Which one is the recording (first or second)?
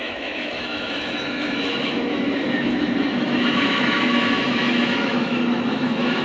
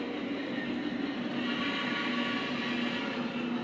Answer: second